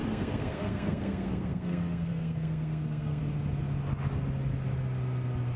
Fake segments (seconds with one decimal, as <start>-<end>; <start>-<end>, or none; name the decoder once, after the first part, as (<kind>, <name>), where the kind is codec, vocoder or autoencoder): 0.0-3.2 (codec, SNAC)